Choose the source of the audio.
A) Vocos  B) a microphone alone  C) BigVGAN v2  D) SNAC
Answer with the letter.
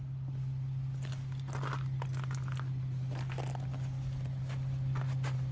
B